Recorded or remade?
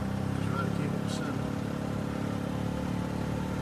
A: recorded